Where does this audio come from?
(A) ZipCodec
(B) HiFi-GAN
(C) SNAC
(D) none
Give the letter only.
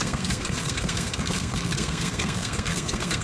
C